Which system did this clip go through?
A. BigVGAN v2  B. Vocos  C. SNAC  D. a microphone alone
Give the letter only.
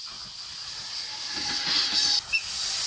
D